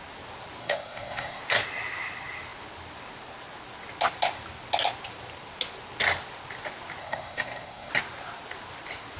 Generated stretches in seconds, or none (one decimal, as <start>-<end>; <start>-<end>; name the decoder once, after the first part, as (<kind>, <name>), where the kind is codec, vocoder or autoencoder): 0.6-1.4 (codec, SNAC); 7.0-7.9